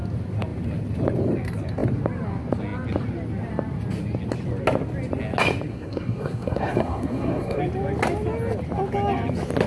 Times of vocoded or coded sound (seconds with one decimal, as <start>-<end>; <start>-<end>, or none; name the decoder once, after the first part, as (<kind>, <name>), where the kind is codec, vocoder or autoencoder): 5.7-7.6 (codec, SNAC)